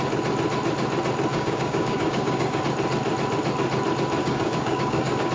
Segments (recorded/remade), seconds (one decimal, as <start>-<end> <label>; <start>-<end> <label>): 0.0-1.3 recorded; 1.3-2.6 remade; 2.6-4.2 recorded; 4.2-5.3 remade